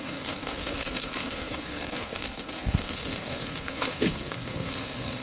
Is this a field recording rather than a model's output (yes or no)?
no